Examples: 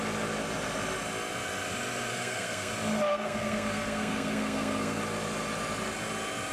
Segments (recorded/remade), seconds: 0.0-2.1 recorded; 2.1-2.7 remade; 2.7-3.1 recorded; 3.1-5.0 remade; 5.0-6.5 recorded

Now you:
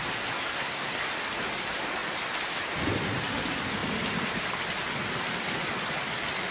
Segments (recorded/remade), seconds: 0.0-0.4 recorded; 0.4-1.0 remade; 1.0-6.5 recorded

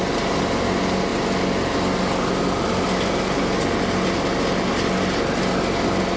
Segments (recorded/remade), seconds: 0.0-6.2 recorded

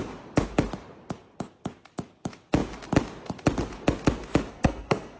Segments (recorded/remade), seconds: 0.0-4.5 recorded; 4.5-5.2 remade